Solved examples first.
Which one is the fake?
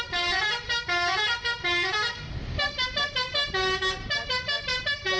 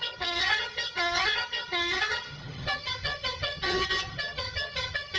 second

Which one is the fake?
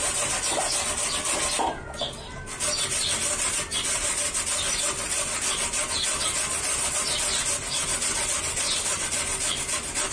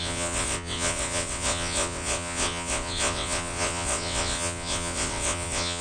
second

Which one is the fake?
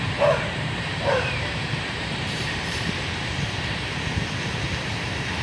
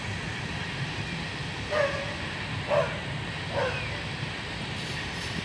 first